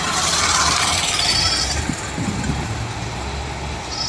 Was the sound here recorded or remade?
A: recorded